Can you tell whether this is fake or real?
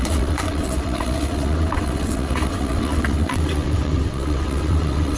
fake